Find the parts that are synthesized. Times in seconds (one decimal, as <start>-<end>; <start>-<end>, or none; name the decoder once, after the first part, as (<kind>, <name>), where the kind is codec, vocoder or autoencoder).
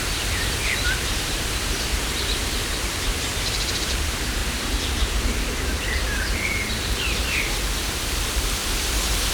0.0-4.4 (vocoder, BigVGAN v2); 4.9-8.6